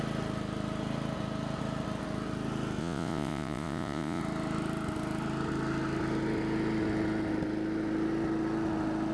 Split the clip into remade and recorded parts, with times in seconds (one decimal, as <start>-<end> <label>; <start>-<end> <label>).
0.0-2.8 recorded; 2.8-4.2 remade; 4.2-9.1 recorded